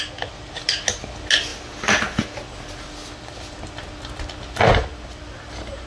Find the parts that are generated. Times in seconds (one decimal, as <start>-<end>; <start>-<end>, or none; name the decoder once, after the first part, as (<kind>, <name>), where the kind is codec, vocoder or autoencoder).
none